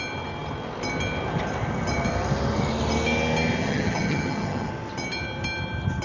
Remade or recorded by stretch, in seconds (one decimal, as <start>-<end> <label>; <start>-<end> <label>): 0.0-3.6 recorded; 3.6-4.7 remade; 4.7-6.0 recorded